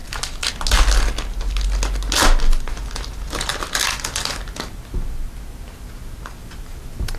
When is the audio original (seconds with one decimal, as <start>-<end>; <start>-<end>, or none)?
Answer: 0.0-6.4